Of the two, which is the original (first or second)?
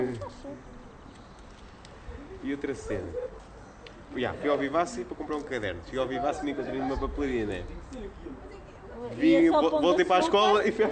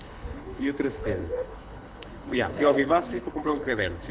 first